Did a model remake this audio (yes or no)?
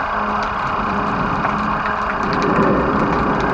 no